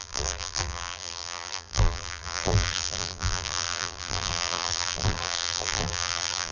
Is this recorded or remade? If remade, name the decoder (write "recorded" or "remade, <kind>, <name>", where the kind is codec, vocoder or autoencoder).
remade, vocoder, BigVGAN v2